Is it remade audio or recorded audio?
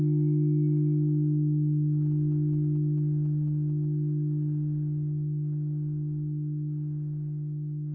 recorded